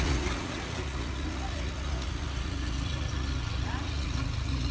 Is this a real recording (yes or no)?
no